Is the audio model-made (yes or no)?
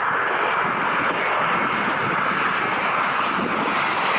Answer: yes